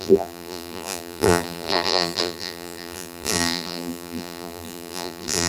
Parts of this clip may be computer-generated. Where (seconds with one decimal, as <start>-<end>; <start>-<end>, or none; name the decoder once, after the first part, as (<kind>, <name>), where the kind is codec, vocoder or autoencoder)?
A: 0.0-5.5 (vocoder, BigVGAN v2)